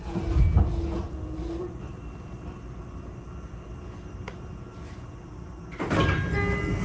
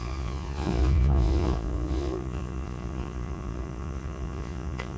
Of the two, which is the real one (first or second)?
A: first